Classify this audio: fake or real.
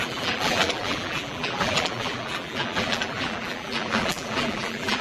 fake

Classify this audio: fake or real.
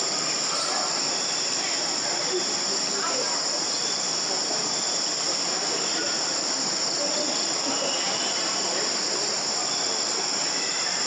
fake